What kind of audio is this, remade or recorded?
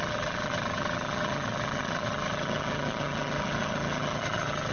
remade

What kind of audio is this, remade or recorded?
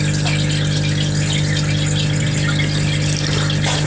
recorded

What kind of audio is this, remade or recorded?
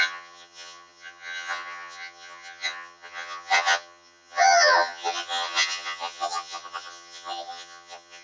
remade